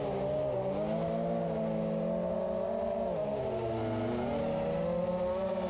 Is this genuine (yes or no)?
yes